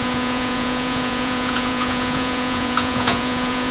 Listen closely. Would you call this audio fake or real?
fake